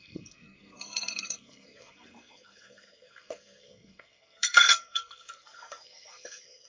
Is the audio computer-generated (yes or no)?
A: yes